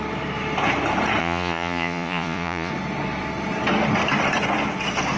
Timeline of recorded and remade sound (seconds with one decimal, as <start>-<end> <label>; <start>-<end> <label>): 0.0-1.2 recorded; 1.2-2.7 remade; 2.7-5.2 recorded